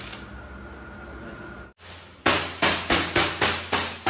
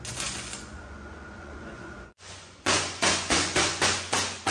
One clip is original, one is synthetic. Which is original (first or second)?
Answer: first